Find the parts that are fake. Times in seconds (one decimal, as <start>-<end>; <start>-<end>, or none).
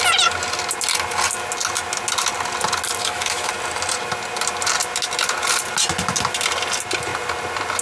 3.0-3.5